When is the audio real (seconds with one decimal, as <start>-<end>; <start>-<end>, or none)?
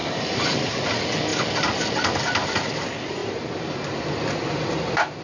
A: 0.7-3.2; 4.3-5.2